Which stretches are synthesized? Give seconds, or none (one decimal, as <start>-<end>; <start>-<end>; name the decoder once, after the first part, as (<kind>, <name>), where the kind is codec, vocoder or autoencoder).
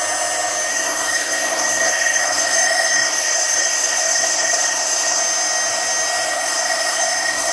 0.7-5.2 (codec, SNAC); 6.3-7.5